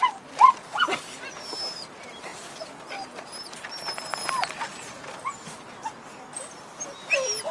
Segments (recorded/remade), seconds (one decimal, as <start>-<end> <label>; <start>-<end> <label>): 0.0-7.5 recorded